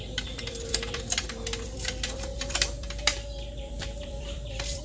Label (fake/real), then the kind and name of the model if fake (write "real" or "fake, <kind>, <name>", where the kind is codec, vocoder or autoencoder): fake, vocoder, BigVGAN v2